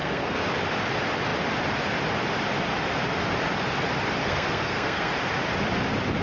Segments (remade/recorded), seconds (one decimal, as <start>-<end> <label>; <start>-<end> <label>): 0.0-0.5 remade; 0.5-4.2 recorded; 4.2-5.1 remade; 5.1-6.2 recorded

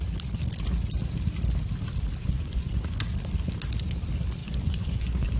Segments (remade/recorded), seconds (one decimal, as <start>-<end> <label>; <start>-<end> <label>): 0.0-2.2 recorded; 2.2-2.7 remade; 2.7-4.4 recorded; 4.4-5.4 remade

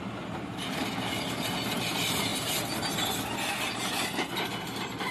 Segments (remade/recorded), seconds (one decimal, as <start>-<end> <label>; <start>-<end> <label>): 0.0-5.1 recorded

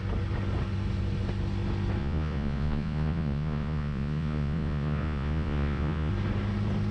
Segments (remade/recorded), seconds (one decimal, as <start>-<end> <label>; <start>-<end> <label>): 0.0-2.0 recorded; 2.0-6.1 remade; 6.1-6.9 recorded